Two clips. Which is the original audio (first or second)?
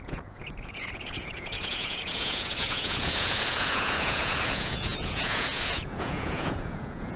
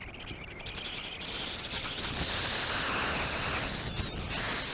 second